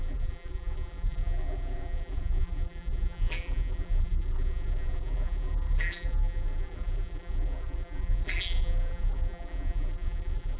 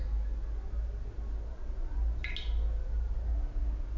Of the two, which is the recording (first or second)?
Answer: second